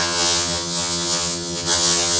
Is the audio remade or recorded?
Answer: remade